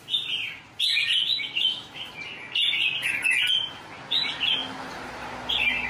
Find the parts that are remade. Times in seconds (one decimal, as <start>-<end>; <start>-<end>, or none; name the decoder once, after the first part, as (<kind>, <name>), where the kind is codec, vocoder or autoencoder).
1.3-2.1 (autoencoder, DAC-VAE)